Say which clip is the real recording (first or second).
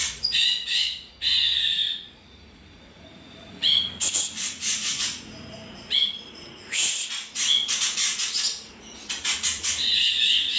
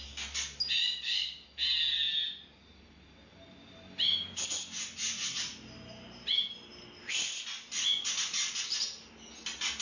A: second